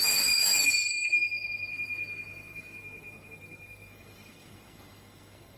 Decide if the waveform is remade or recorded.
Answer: remade